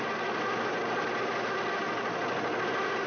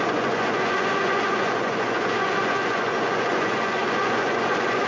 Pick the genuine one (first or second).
first